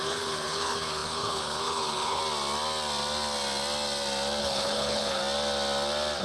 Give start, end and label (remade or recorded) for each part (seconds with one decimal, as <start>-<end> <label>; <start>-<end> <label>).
0.0-2.2 remade; 2.2-4.4 recorded; 4.4-5.2 remade; 5.2-6.2 recorded